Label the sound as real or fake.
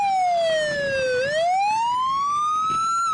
real